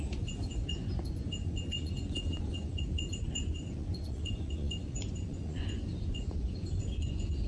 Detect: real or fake fake